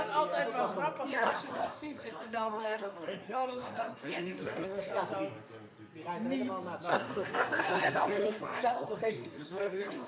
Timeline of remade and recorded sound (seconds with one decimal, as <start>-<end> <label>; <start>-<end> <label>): 0.0-1.1 recorded; 1.1-4.9 remade; 4.9-6.9 recorded; 6.9-10.1 remade